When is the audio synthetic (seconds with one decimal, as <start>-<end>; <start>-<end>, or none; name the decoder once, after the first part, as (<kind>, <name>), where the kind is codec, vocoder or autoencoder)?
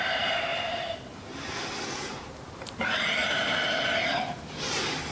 0.5-2.3 (vocoder, BigVGAN v2); 3.2-5.1